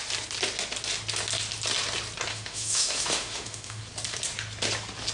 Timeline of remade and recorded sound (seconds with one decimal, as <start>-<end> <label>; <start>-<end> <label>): 0.0-2.3 recorded; 2.3-3.8 remade; 3.8-5.1 recorded